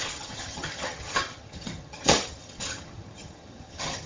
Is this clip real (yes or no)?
no